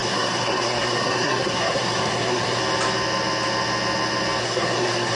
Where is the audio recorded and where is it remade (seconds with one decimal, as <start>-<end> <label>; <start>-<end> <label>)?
0.0-2.6 remade; 2.6-4.4 recorded; 4.4-5.2 remade

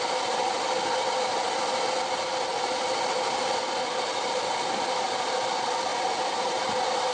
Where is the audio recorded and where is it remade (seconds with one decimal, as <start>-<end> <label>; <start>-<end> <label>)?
0.0-7.1 recorded

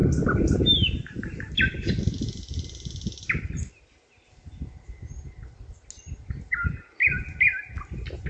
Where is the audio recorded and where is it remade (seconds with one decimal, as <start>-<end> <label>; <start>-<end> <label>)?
0.0-8.3 recorded